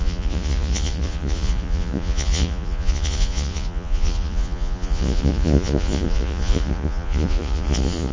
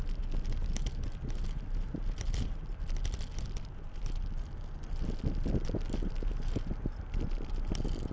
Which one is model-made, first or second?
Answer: first